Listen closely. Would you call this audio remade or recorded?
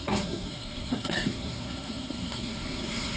remade